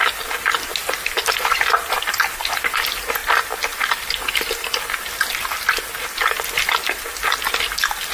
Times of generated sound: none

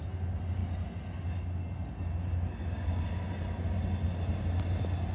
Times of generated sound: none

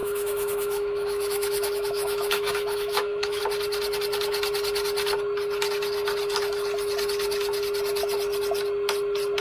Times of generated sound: 0.0-3.4 (autoencoder, DAC-VAE)

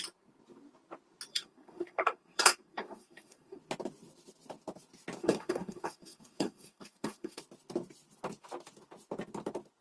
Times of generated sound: 1.3-3.6 (codec, SNAC); 5.2-7.4

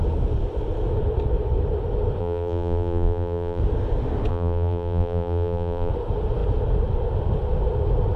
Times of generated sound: 2.2-3.6 (vocoder, BigVGAN v2); 4.3-5.9